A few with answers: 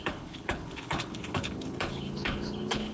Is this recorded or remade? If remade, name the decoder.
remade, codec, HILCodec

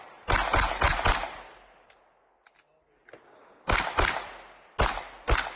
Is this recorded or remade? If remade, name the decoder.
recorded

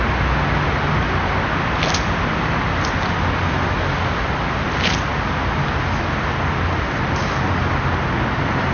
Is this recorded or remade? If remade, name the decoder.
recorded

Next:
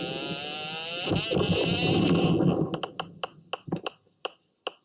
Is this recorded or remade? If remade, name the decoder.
recorded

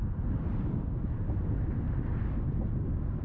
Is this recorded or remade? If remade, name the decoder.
remade, vocoder, BigVGAN v2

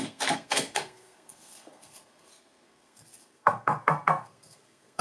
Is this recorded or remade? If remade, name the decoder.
remade, codec, SNAC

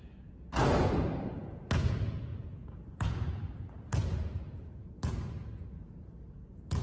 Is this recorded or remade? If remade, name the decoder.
remade, vocoder, Vocos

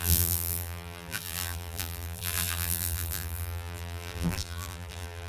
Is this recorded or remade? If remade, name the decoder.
remade, vocoder, BigVGAN v2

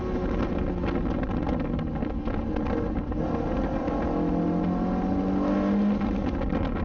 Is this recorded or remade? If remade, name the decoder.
recorded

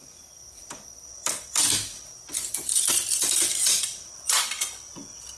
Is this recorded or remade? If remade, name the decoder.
recorded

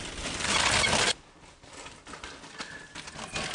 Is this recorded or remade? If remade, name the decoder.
recorded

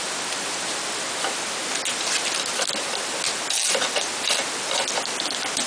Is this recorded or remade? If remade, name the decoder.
recorded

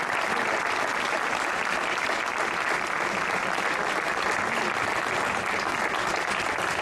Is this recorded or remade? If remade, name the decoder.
recorded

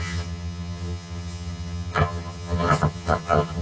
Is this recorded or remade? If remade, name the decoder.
remade, vocoder, HiFi-GAN